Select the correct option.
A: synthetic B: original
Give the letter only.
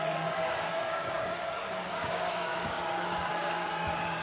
A